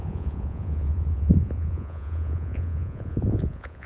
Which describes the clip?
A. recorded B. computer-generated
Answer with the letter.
B